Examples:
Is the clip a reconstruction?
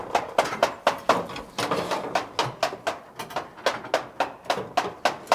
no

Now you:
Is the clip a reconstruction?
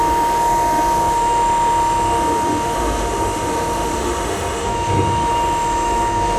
yes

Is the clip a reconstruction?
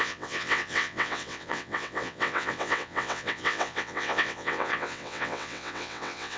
yes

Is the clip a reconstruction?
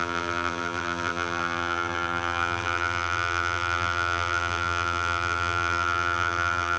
yes